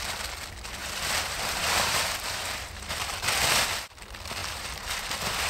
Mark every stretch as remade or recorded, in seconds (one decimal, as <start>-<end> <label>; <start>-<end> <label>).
0.0-0.8 recorded; 0.8-3.3 remade; 3.3-4.4 recorded; 4.4-5.1 remade; 5.1-5.5 recorded